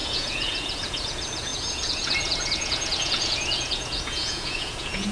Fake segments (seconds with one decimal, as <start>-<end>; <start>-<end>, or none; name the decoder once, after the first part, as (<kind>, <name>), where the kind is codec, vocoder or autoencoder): 0.0-5.1 (vocoder, Vocos)